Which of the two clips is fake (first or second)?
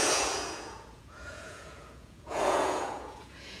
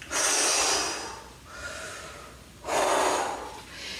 first